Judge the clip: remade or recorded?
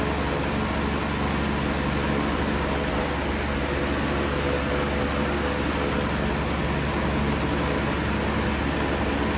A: recorded